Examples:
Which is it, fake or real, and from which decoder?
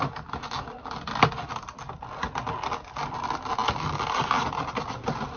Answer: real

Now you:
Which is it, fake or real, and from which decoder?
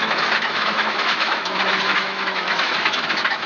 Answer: fake, autoencoder, DAC-VAE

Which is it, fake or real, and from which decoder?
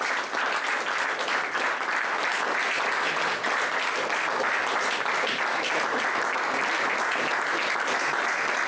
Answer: real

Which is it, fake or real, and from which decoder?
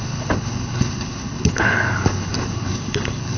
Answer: fake, codec, HILCodec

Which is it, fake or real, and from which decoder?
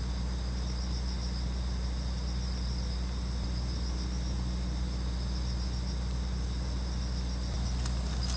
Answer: real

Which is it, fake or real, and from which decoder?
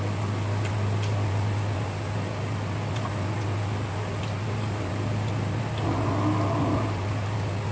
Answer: real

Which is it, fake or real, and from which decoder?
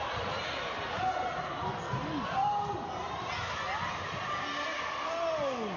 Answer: real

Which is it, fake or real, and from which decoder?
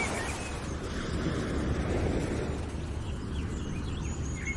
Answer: real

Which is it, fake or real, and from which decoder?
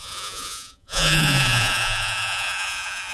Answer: fake, vocoder, Vocos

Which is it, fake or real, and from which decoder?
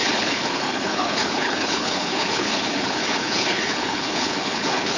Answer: fake, codec, HILCodec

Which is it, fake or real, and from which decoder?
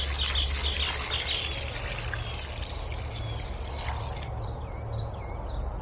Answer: real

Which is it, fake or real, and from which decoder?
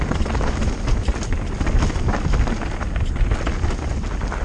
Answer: real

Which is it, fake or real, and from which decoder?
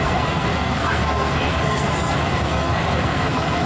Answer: fake, codec, SNAC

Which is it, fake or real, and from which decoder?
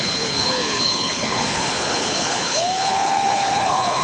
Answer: fake, codec, HILCodec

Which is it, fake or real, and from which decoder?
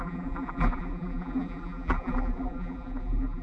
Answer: fake, vocoder, BigVGAN v2